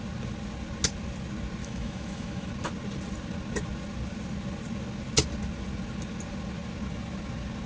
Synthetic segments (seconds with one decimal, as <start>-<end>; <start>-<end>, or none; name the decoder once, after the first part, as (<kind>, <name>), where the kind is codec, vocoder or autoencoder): 1.6-2.5 (autoencoder, DAC-VAE)